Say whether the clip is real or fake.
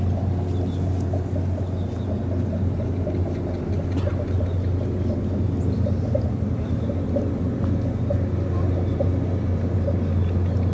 real